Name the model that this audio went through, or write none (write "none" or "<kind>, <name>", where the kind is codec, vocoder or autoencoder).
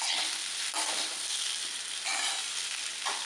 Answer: none